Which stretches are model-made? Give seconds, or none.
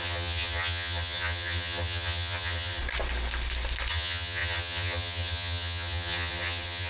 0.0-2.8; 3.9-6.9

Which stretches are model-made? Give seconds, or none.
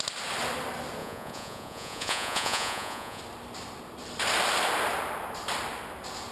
1.0-3.2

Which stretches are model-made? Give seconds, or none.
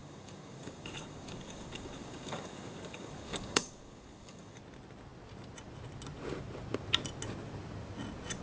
0.0-4.6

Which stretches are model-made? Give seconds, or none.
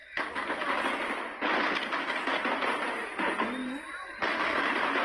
none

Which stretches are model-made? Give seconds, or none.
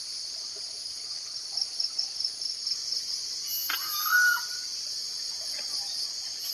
none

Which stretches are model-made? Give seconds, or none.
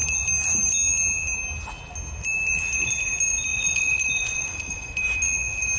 3.5-5.0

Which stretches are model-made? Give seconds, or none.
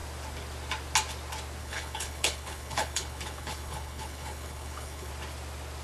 1.6-5.1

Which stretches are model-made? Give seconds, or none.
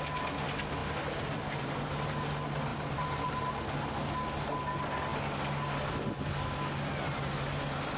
0.8-1.4; 2.7-3.5